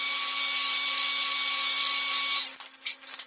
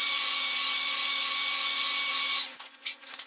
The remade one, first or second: second